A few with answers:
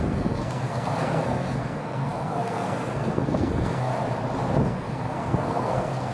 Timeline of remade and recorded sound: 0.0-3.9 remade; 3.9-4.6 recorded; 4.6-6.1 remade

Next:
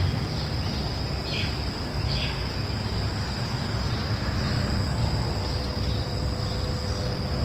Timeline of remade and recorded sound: 0.0-1.9 recorded; 1.9-2.5 remade; 2.5-7.4 recorded

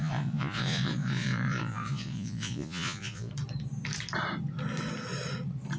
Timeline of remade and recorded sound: 0.0-3.3 remade; 3.3-5.8 recorded

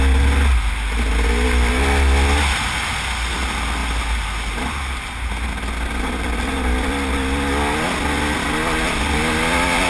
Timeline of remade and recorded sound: 0.0-9.9 recorded